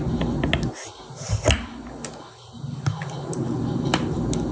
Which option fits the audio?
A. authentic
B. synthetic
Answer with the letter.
A